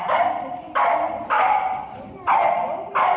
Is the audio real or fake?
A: real